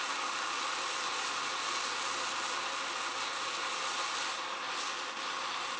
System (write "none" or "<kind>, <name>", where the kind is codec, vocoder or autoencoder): none